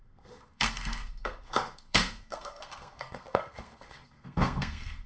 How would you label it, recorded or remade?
remade